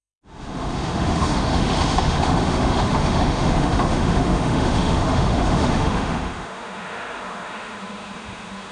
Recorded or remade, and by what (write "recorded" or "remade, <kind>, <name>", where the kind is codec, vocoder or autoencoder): remade, autoencoder, DAC-VAE